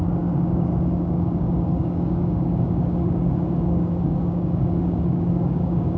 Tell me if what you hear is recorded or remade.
remade